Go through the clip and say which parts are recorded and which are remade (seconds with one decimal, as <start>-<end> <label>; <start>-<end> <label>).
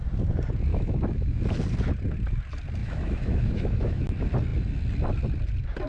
0.0-0.7 recorded; 0.7-1.4 remade; 1.4-2.8 recorded; 2.8-4.0 remade; 4.0-5.9 recorded